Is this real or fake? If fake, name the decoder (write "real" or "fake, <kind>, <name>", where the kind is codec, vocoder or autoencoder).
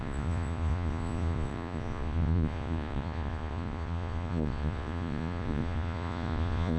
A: fake, vocoder, Vocos